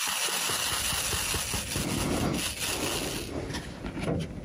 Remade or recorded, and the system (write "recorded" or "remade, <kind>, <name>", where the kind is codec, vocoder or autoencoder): recorded